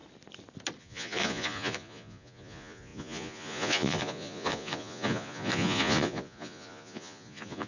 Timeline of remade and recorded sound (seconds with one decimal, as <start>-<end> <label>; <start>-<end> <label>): 0.0-0.8 recorded; 0.8-7.7 remade